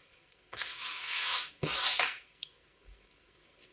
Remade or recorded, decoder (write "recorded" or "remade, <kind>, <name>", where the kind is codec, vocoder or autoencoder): remade, codec, SNAC